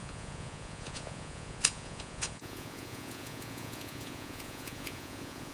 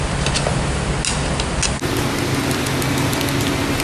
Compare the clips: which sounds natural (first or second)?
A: second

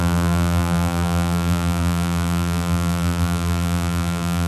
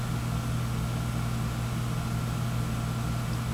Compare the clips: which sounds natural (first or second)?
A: second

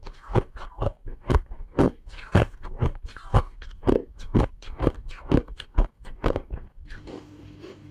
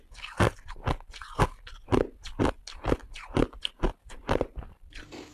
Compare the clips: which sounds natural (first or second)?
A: second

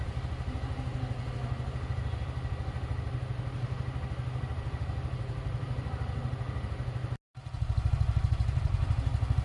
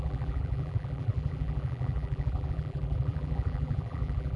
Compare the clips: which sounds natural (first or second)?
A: first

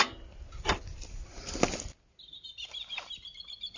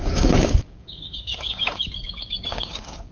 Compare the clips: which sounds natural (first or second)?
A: first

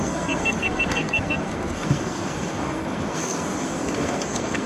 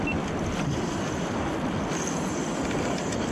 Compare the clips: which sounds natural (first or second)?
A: second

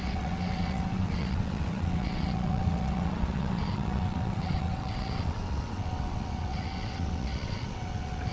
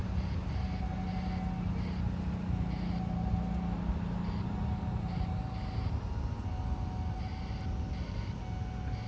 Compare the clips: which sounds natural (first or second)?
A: second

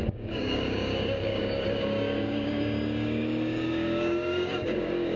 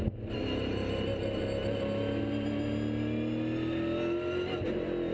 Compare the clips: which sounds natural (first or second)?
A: second